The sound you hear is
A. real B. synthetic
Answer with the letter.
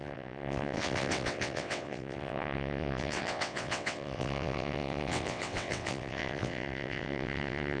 B